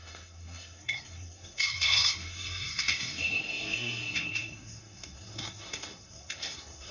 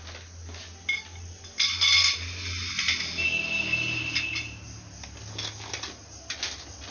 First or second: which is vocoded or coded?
first